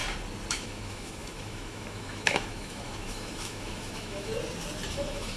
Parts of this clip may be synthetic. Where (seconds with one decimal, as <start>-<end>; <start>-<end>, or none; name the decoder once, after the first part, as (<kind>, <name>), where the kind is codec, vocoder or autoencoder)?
0.5-4.3 (autoencoder, DAC-VAE); 4.9-5.4

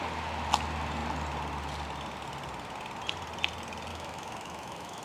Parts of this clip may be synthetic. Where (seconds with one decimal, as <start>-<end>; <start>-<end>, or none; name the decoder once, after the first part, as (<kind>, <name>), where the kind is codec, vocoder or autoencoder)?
3.9-5.0 (autoencoder, DAC-VAE)

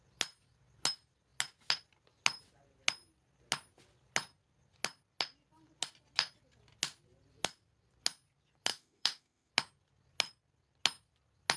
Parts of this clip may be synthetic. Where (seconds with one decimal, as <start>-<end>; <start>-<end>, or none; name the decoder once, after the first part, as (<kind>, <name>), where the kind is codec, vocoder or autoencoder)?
8.7-9.5 (autoencoder, DAC-VAE)

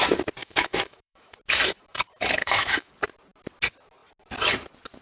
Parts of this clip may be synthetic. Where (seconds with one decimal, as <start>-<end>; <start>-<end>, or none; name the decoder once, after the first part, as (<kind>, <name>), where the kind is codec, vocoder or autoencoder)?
0.4-1.3 (autoencoder, DAC-VAE); 2.4-2.9

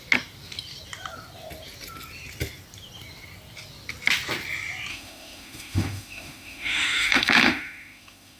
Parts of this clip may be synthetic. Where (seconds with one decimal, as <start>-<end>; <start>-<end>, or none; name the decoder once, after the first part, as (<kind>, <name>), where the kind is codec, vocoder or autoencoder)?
4.9-8.4 (autoencoder, DAC-VAE)